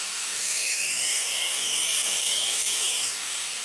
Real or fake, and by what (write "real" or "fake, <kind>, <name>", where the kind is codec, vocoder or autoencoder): fake, codec, DAC